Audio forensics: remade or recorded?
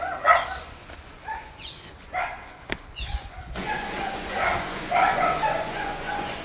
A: remade